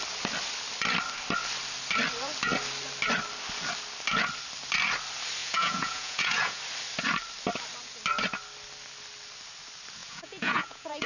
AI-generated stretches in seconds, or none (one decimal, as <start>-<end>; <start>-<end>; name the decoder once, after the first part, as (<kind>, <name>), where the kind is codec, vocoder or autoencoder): 5.4-6.6 (vocoder, Vocos); 10.0-11.1